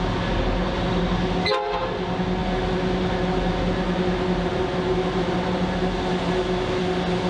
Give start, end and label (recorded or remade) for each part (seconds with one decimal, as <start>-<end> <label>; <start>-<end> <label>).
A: 0.0-7.3 recorded